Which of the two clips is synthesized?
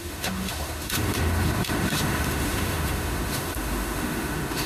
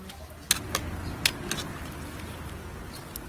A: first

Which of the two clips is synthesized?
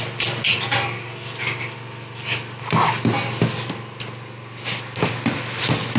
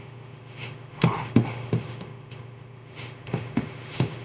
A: second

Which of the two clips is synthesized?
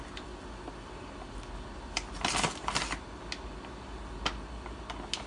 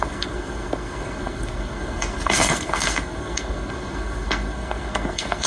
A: second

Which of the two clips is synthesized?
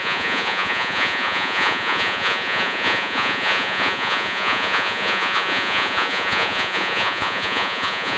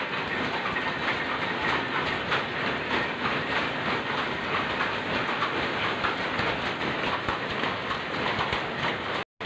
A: first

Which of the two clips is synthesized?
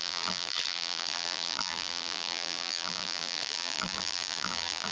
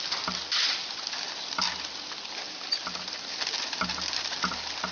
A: first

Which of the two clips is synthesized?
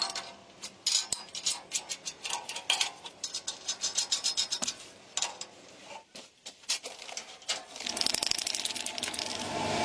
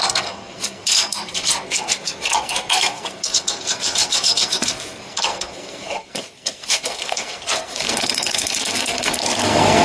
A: second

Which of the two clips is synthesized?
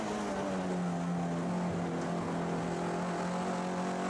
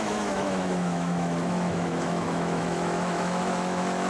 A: second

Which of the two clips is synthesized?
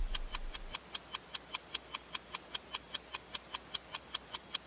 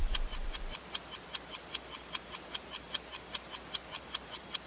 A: second